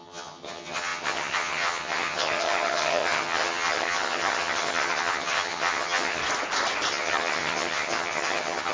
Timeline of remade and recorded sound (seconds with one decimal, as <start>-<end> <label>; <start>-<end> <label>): 0.0-6.2 remade; 6.2-6.9 recorded; 6.9-8.7 remade